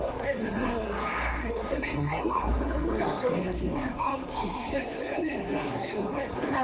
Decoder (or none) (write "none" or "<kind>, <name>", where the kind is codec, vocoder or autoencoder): codec, SNAC